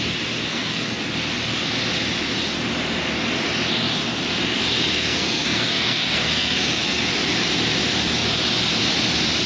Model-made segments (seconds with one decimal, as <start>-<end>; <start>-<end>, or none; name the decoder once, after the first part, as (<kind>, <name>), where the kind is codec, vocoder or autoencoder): 0.5-1.0 (codec, SNAC); 4.9-7.0

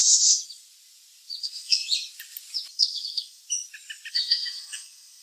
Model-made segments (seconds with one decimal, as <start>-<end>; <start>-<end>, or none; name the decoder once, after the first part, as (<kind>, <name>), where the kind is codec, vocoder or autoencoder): 1.4-1.8 (codec, SNAC); 2.7-3.4; 4.1-5.2